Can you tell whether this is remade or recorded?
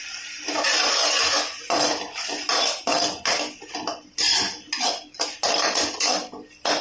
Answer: recorded